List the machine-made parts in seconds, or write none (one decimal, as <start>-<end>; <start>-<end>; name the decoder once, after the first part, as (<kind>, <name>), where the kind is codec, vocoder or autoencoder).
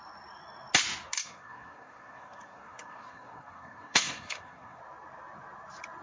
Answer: 1.2-4.8 (codec, SNAC)